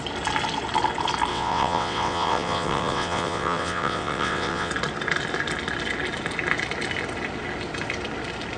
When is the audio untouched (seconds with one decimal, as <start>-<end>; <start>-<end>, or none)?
0.0-1.3; 4.7-8.6